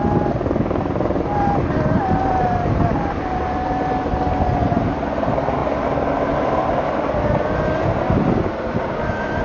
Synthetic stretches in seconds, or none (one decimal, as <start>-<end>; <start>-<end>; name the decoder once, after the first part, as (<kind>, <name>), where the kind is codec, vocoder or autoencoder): none